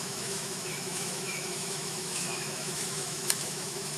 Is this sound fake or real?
fake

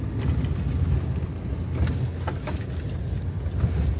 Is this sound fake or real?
real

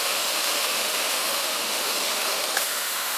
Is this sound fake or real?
fake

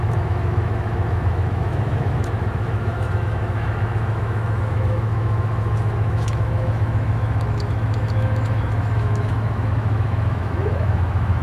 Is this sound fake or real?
fake